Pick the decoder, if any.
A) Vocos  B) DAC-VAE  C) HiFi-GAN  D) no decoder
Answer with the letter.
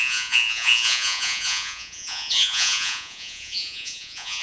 A